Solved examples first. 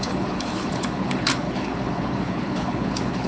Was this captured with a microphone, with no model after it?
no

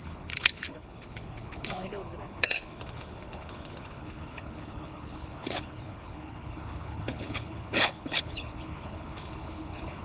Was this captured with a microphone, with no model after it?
no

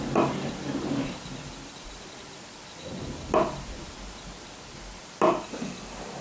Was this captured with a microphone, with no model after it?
yes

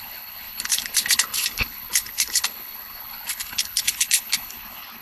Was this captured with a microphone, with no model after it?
no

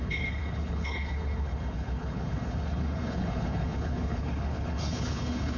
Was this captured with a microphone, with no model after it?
no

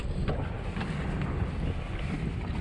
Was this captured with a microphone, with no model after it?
yes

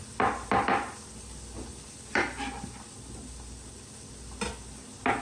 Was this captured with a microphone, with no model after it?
yes